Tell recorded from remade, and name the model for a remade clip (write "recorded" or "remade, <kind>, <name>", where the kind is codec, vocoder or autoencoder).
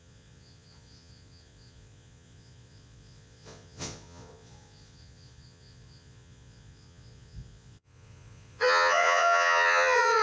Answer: remade, vocoder, Vocos